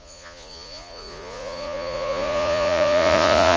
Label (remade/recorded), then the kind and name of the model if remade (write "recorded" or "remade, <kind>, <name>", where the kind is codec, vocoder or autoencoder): remade, vocoder, Vocos